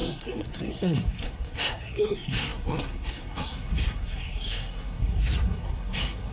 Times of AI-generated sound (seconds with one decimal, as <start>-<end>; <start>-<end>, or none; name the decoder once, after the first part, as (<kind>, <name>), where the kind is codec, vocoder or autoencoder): 0.0-6.3 (codec, SNAC)